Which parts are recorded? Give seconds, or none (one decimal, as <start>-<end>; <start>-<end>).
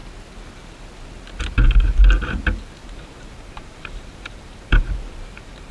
0.0-2.8